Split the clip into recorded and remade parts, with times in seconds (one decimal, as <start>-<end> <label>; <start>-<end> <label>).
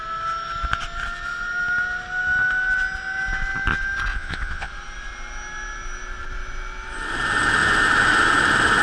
0.0-4.1 recorded; 4.1-4.7 remade; 4.7-8.8 recorded